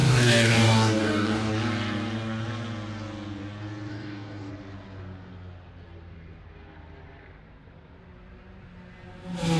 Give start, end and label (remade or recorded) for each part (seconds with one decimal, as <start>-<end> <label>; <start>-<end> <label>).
0.0-1.5 remade; 1.5-3.9 recorded; 3.9-4.5 remade; 4.5-9.6 recorded